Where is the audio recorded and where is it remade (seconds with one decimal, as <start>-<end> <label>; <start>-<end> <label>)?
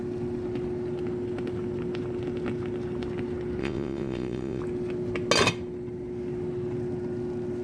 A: 0.0-3.6 recorded; 3.6-4.6 remade; 4.6-7.6 recorded